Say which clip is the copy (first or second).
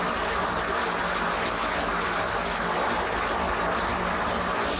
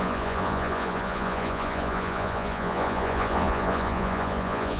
second